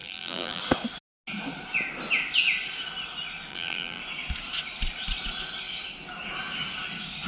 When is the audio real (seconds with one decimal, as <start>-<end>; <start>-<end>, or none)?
0.6-3.5; 4.0-7.3